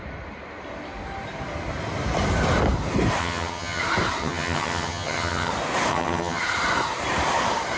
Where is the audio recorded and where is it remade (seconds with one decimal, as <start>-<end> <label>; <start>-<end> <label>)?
0.0-3.2 recorded; 3.2-3.8 remade; 3.8-4.2 recorded; 4.2-5.5 remade; 5.5-5.9 recorded; 5.9-6.4 remade; 6.4-7.8 recorded